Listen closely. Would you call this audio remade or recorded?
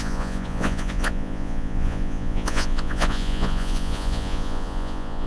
remade